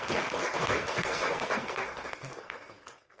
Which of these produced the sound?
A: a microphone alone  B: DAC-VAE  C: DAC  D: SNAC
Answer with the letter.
D